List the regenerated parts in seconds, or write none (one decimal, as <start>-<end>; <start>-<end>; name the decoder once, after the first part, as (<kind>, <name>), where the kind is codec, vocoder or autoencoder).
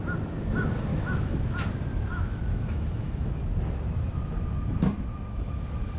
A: 0.9-1.7 (autoencoder, DAC-VAE); 2.1-3.4